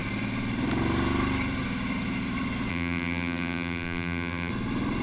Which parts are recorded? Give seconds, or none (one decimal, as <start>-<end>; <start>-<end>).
0.0-2.7; 4.5-5.0